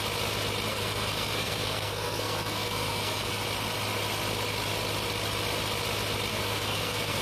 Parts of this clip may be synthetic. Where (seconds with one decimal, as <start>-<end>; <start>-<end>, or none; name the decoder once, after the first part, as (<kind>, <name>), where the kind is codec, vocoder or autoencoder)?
0.7-3.4 (codec, SNAC); 6.3-7.2